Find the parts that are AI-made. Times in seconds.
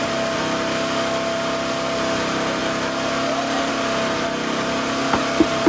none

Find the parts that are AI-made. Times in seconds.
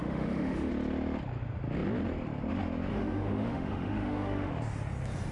0.0-0.7 (autoencoder, DAC-VAE); 2.9-4.5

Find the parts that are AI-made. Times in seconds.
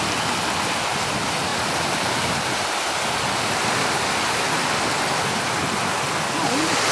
none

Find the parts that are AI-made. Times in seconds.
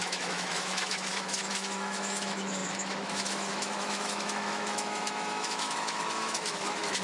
0.0-7.0 (autoencoder, DAC-VAE)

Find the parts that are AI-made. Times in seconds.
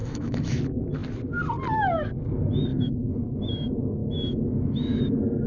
0.0-0.6 (autoencoder, DAC-VAE); 2.7-3.2; 4.0-5.0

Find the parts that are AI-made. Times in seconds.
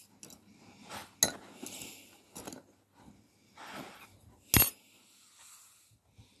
none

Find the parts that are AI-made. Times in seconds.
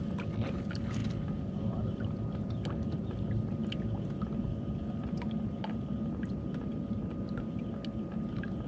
none